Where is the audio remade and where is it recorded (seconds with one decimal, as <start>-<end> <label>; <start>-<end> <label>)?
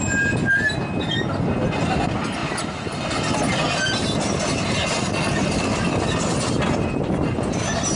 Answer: 0.0-8.0 recorded